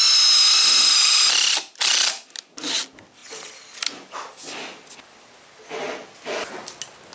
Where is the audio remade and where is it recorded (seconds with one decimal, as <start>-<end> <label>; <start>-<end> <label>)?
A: 0.0-7.1 recorded